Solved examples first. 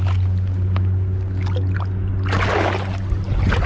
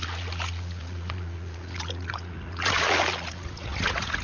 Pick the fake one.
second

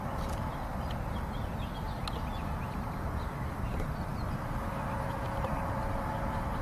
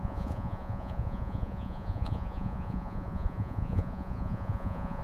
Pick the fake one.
second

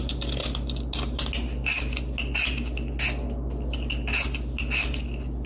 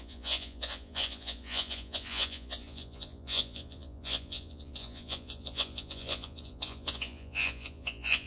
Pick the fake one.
second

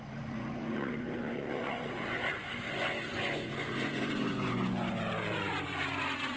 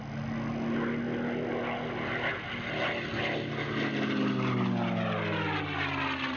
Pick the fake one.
first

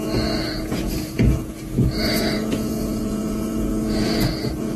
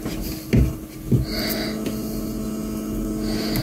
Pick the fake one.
first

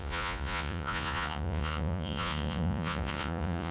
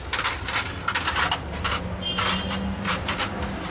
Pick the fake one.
first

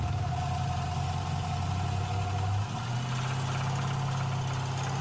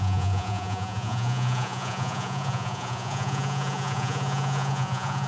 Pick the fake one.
second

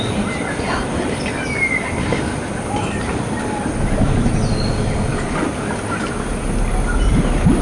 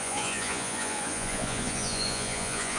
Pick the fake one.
second